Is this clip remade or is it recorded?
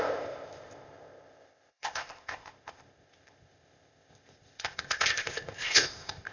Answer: remade